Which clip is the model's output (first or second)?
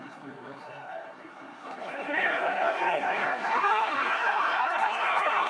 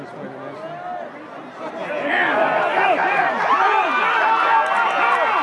first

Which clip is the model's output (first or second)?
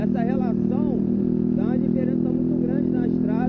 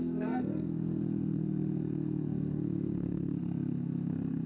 second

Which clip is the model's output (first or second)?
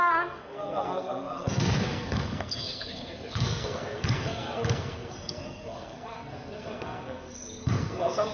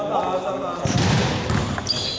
first